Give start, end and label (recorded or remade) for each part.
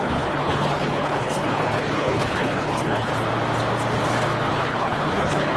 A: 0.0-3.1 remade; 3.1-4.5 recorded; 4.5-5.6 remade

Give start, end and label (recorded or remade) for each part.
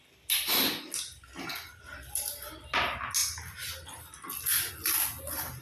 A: 0.0-5.6 recorded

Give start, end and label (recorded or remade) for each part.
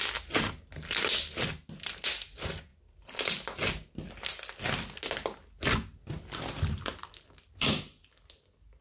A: 0.0-8.8 recorded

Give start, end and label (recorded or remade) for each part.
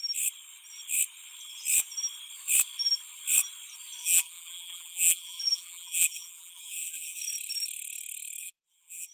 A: 0.0-4.0 recorded; 4.0-7.2 remade; 7.2-8.4 recorded; 8.4-9.1 remade